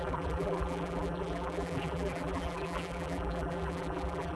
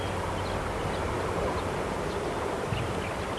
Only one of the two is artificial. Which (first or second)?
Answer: first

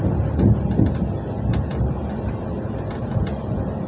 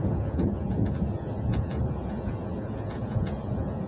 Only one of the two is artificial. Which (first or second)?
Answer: second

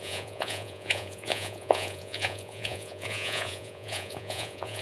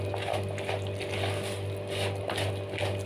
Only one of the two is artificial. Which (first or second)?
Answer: first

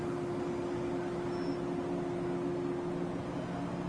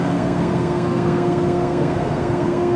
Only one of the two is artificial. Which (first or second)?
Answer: second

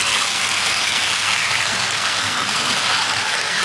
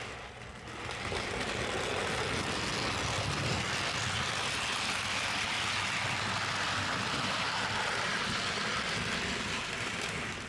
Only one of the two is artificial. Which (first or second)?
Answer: first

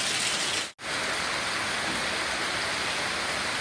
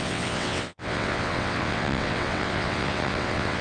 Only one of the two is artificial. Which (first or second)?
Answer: second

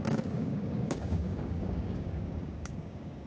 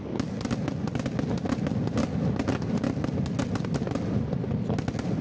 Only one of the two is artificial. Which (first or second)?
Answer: first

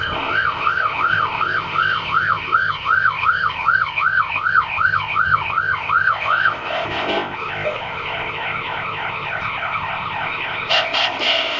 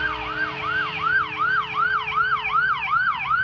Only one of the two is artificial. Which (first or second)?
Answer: first